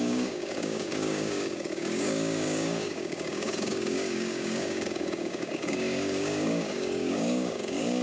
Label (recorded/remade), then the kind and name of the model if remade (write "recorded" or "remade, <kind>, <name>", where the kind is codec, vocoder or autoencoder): remade, codec, DAC